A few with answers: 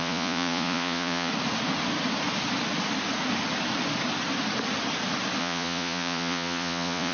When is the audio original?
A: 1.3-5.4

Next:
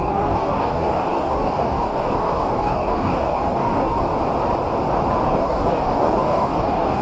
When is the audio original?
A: 4.1-5.3

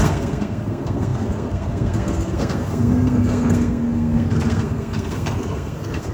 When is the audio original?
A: none

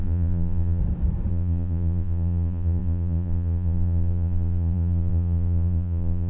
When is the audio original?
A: 0.8-1.3